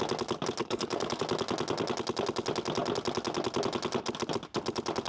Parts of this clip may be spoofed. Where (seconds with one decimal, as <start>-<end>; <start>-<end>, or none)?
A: 0.6-1.2